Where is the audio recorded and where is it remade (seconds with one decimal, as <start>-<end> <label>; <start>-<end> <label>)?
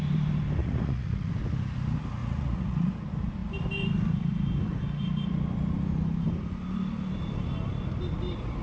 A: 0.0-0.6 recorded; 0.6-1.3 remade; 1.3-2.2 recorded; 2.2-2.9 remade; 2.9-8.6 recorded